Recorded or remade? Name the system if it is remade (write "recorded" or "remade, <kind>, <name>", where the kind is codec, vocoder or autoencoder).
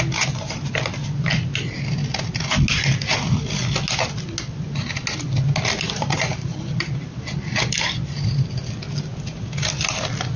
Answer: recorded